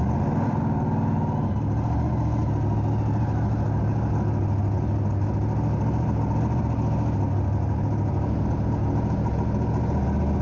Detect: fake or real real